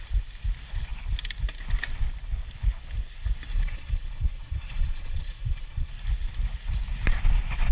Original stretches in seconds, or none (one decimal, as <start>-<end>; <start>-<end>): 0.0-3.5; 5.9-7.7